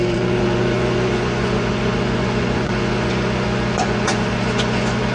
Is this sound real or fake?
fake